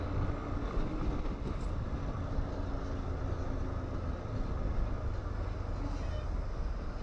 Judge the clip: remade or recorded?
recorded